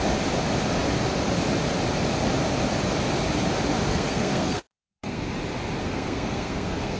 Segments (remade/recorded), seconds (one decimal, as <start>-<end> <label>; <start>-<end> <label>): 0.0-3.9 recorded; 3.9-5.2 remade; 5.2-5.8 recorded; 5.8-7.0 remade